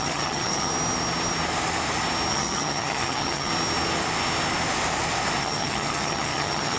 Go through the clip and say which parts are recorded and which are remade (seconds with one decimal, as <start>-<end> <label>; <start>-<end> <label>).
0.0-0.7 remade; 0.7-2.3 recorded; 2.3-3.5 remade; 3.5-5.4 recorded; 5.4-6.8 remade